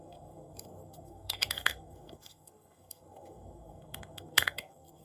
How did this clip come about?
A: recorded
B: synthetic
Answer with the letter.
B